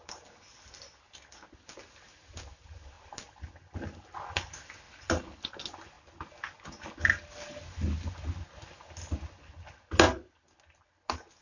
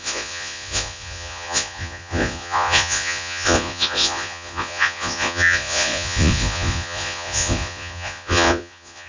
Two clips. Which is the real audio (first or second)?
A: first